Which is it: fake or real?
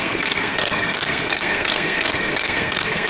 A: fake